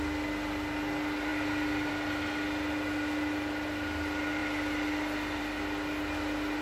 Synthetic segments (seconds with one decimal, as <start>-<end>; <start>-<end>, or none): none